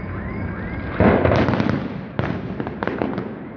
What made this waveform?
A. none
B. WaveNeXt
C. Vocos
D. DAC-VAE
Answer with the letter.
A